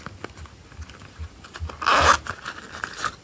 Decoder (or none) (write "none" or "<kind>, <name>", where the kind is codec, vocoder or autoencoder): none